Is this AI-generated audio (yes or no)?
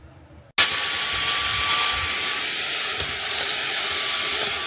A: no